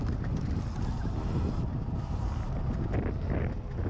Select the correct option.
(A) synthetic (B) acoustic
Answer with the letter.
B